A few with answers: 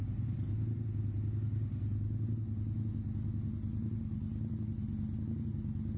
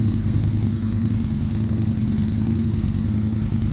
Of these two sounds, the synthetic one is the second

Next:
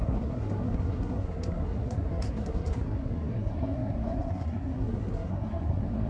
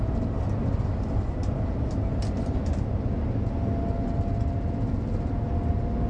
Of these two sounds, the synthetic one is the first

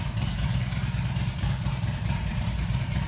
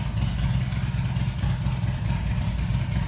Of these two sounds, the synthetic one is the first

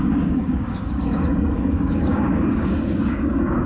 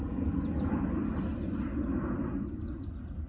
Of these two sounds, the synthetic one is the first